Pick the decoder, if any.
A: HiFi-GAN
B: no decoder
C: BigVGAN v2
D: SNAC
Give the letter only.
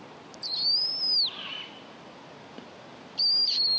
B